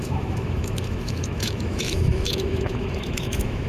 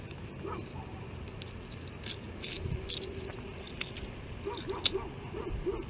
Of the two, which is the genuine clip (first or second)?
second